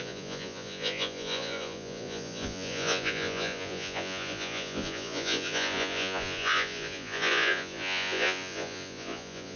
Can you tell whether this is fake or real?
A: fake